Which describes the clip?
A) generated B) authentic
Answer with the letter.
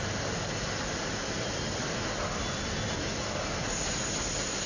B